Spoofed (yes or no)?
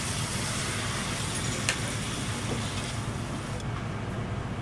no